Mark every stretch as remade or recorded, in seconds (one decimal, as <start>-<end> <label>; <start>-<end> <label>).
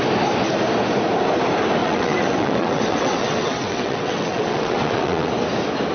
0.0-1.8 recorded; 1.8-5.3 remade; 5.3-5.9 recorded